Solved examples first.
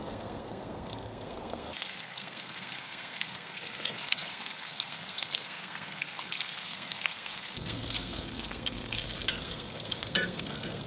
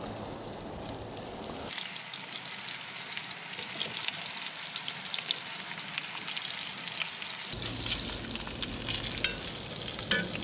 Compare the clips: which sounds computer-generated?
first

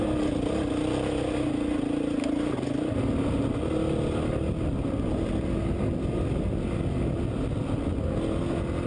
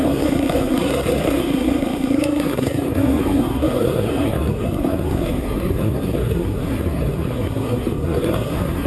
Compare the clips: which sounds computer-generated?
second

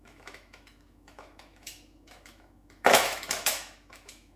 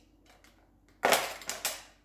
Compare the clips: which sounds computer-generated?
first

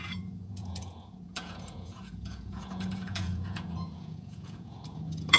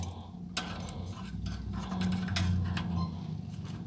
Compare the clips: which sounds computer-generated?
first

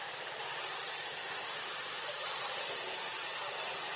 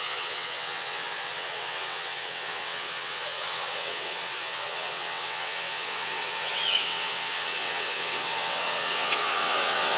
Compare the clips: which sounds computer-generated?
second